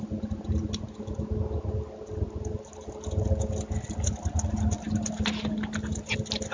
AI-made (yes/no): no